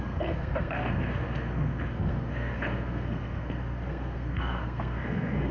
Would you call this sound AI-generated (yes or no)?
yes